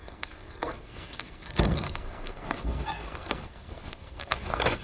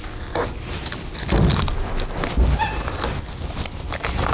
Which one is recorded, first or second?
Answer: second